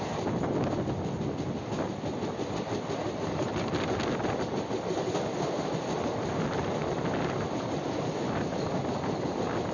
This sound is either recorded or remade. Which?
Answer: recorded